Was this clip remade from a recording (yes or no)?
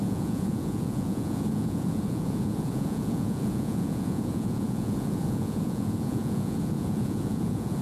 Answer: yes